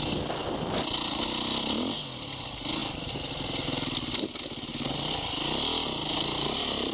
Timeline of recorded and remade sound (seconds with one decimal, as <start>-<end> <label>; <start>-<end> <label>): 0.0-2.8 recorded; 2.8-3.3 remade; 3.3-4.7 recorded; 4.7-6.9 remade